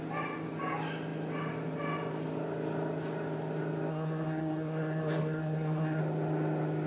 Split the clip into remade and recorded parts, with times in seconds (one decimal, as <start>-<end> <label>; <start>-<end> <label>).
0.0-3.9 recorded; 3.9-6.0 remade; 6.0-6.9 recorded

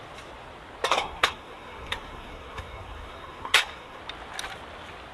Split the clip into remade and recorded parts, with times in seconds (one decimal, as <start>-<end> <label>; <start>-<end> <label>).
0.0-0.9 recorded; 0.9-4.0 remade; 4.0-5.1 recorded

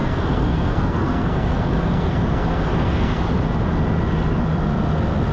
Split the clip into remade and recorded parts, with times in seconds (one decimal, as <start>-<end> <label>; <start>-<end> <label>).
0.0-3.2 remade; 3.2-5.3 recorded

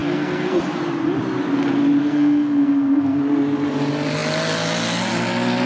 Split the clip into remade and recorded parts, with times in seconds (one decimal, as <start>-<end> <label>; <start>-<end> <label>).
0.0-0.6 remade; 0.6-2.0 recorded; 2.0-3.2 remade; 3.2-5.7 recorded